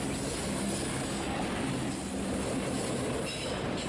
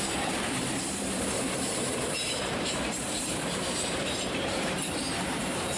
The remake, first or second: second